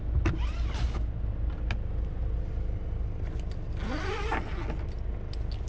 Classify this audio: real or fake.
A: real